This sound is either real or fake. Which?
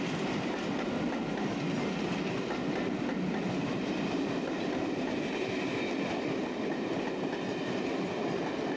real